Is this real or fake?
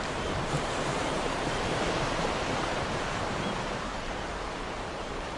fake